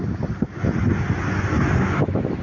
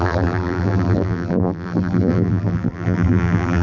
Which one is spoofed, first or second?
second